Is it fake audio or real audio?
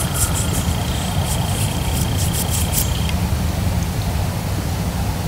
real